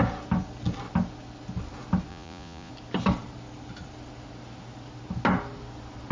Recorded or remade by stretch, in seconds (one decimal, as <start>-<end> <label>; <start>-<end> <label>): 0.0-2.1 recorded; 2.1-2.7 remade; 2.7-6.1 recorded